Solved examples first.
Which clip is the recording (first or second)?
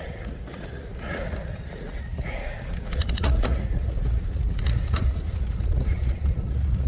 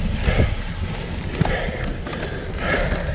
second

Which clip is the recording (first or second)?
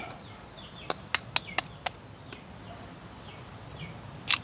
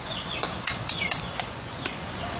first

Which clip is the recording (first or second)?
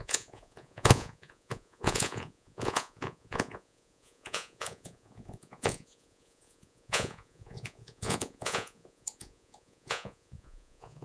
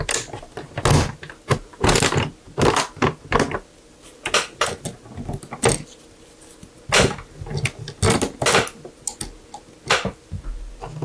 second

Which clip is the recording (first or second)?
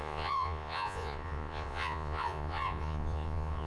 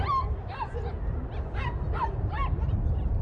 second